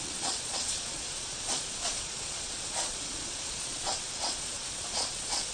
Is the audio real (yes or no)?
no